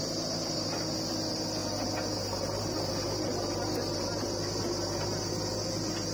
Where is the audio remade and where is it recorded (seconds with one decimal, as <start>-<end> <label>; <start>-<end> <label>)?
0.0-6.1 recorded